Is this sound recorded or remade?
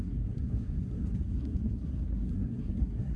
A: remade